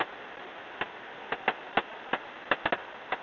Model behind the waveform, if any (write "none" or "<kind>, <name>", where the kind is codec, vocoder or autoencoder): none